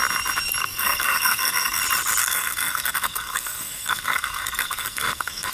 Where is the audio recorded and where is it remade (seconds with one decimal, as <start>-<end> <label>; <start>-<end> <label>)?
0.0-0.6 recorded; 0.6-1.8 remade; 1.8-2.2 recorded; 2.2-5.5 remade